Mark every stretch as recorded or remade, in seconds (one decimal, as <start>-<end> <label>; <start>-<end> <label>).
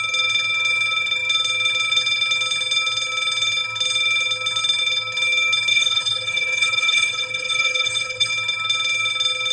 0.0-5.7 recorded; 5.7-8.3 remade; 8.3-9.5 recorded